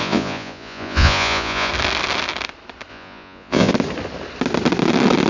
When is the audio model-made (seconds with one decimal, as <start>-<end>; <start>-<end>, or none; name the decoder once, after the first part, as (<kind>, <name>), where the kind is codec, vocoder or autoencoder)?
0.0-1.7 (vocoder, Vocos); 2.9-3.7